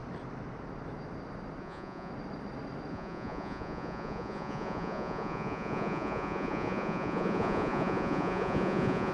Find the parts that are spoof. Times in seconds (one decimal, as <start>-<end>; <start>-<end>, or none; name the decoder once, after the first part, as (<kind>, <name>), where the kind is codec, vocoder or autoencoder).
1.6-2.1 (vocoder, Vocos); 2.9-9.1